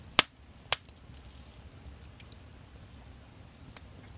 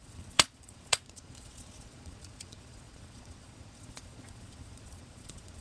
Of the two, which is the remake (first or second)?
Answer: second